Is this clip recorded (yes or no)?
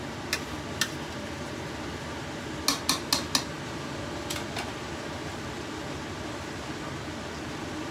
yes